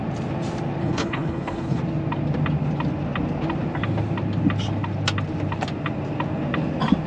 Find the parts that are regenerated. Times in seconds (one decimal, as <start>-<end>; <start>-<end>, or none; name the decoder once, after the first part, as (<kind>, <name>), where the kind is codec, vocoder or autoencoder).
0.8-1.8 (codec, HILCodec)